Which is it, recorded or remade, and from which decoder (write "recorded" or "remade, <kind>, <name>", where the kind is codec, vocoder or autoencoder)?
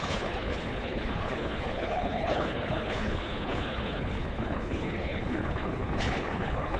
remade, codec, HILCodec